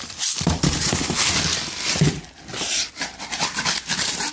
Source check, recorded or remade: recorded